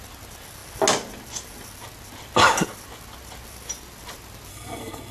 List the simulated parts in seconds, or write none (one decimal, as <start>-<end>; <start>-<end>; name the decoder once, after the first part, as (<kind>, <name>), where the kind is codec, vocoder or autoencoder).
4.5-5.1 (codec, SNAC)